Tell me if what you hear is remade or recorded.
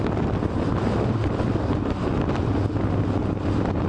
recorded